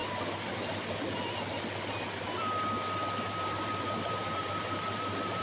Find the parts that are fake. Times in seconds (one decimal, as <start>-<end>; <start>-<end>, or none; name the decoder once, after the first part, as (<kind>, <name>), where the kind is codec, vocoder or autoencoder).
3.2-5.4 (vocoder, BigVGAN v2)